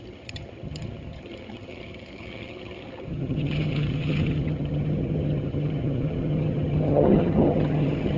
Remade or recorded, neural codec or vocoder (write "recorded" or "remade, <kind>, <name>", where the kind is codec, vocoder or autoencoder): remade, vocoder, HiFi-GAN